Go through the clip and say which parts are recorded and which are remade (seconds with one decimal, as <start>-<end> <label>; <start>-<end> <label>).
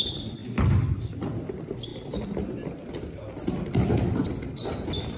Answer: 0.0-5.2 recorded